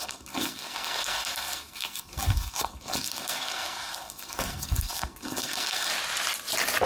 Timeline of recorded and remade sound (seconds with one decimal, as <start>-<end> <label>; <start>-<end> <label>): 0.0-5.9 remade; 5.9-6.9 recorded